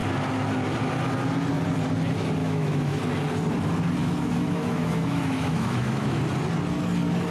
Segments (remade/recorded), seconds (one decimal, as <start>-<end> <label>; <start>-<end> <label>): 0.0-2.4 recorded; 2.4-3.0 remade; 3.0-4.0 recorded; 4.0-6.2 remade; 6.2-7.3 recorded